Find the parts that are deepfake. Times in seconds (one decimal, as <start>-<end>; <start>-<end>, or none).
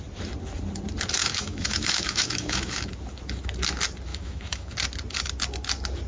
1.2-2.9; 4.1-4.7